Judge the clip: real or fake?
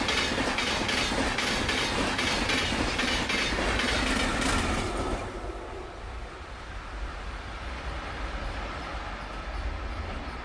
real